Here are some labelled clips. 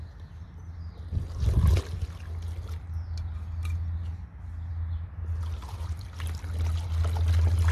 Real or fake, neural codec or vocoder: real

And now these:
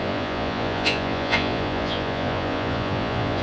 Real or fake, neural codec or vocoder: fake, vocoder, Vocos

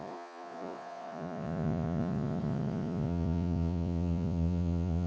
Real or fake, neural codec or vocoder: fake, vocoder, Vocos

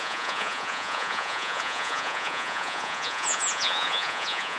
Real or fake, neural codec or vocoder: fake, vocoder, Vocos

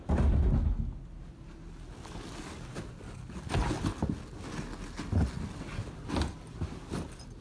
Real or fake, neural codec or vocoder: real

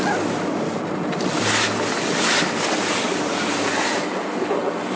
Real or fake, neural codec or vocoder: real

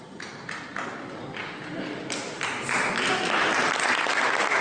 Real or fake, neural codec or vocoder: real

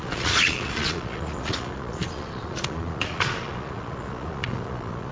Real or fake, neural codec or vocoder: fake, vocoder, Vocos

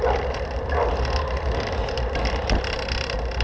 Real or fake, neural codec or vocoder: real